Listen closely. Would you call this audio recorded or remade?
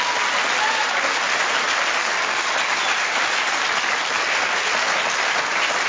recorded